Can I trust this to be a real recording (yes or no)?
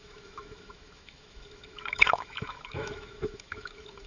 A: no